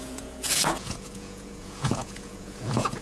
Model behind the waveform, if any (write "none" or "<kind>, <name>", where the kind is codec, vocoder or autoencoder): vocoder, Vocos